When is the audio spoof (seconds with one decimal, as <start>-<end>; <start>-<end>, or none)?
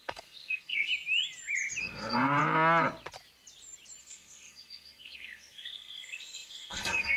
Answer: 0.0-0.9; 1.8-2.4; 4.0-7.2